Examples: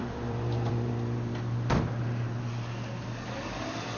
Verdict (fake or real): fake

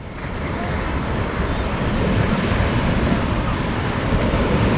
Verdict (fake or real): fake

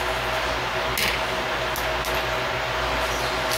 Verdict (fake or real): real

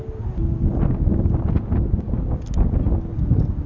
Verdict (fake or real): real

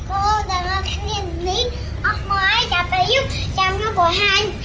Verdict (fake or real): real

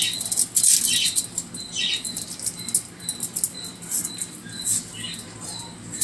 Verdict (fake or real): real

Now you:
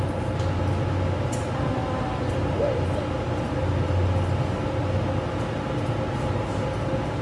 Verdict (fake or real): real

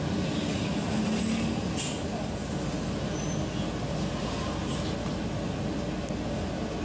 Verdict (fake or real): real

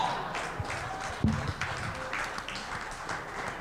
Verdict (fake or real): real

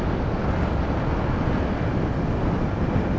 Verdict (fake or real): real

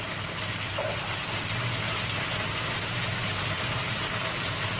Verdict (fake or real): fake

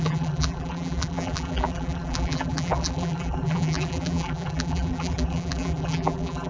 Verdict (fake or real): fake